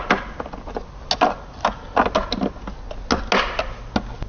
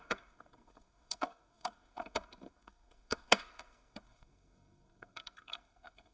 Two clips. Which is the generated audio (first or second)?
second